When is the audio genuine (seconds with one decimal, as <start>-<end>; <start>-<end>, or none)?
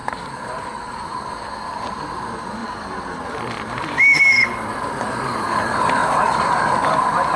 0.0-7.4